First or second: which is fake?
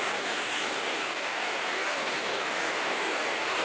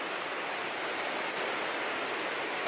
first